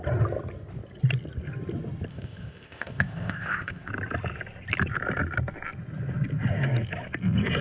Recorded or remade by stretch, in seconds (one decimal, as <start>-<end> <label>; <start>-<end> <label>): 0.0-2.1 recorded; 2.1-3.9 remade; 3.9-7.6 recorded